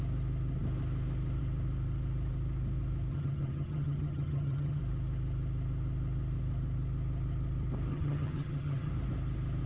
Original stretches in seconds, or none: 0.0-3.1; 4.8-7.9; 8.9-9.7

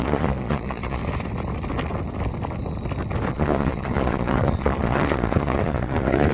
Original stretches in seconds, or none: 1.0-3.3

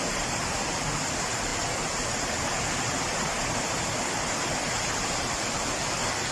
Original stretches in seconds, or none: none

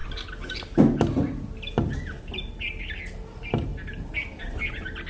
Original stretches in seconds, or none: 0.0-5.1

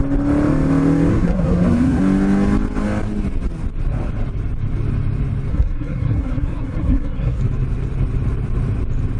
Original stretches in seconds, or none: 0.0-1.1; 2.0-5.5; 7.4-9.2

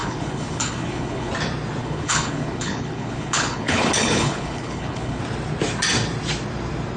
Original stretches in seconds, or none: 1.3-1.8; 5.2-7.0

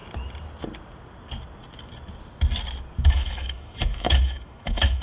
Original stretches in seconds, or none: 0.0-3.0